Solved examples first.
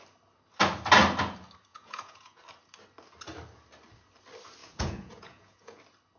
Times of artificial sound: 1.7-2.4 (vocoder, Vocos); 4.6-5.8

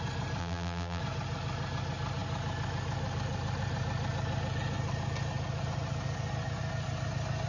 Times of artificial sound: 0.4-1.0 (vocoder, BigVGAN v2)

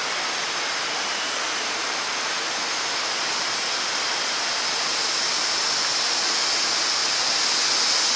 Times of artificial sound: none

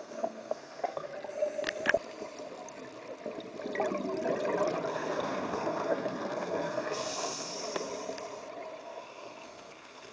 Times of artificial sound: 0.0-1.1 (codec, SNAC); 4.9-7.5; 8.8-10.1

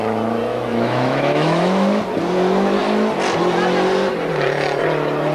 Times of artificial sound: 0.5-2.0 (autoencoder, DAC-VAE)

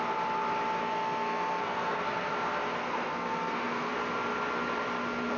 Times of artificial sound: 0.8-2.3 (codec, SNAC); 2.8-3.9